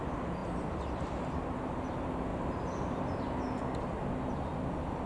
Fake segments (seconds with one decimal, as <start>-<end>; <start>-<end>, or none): 0.4-1.9; 2.3-3.2